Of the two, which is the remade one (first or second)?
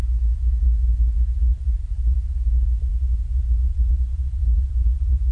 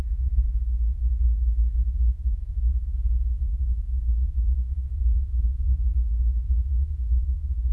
second